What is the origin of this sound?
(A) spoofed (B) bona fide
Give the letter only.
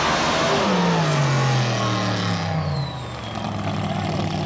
B